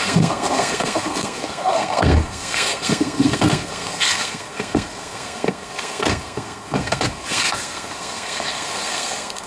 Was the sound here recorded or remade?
remade